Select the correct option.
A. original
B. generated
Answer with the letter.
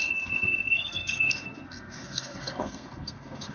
B